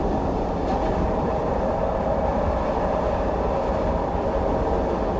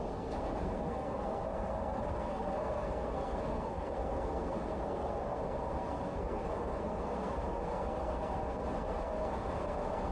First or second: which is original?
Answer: first